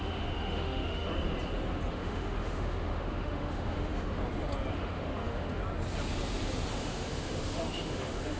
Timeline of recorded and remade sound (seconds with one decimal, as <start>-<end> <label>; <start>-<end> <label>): 0.0-1.1 remade; 1.1-1.9 recorded; 1.9-4.2 remade; 4.2-4.7 recorded; 4.7-5.6 remade; 5.6-6.7 recorded; 6.7-8.4 remade